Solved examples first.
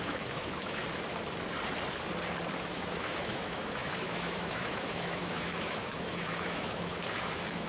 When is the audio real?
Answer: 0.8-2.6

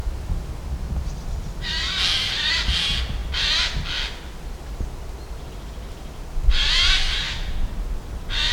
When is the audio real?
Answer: 0.0-8.5

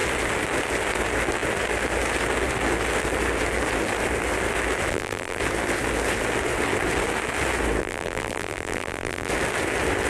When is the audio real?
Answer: 0.0-4.9; 5.4-7.8; 9.3-10.1

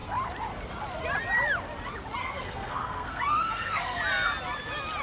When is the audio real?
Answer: 0.0-2.2; 4.0-5.0

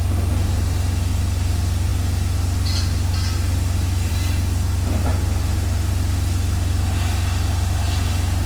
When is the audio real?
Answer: 0.0-8.5

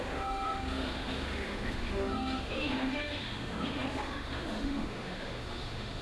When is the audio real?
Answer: none

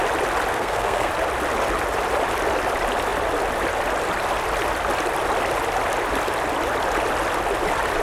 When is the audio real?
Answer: 0.0-0.5; 1.1-8.0